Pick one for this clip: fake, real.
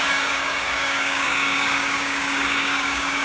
fake